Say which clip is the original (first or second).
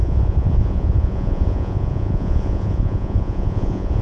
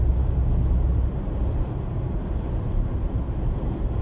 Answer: second